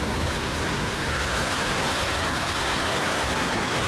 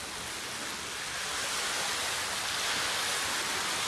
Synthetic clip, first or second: first